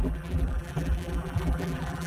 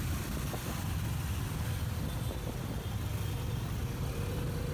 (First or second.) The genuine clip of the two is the second